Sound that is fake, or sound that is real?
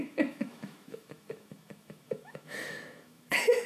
fake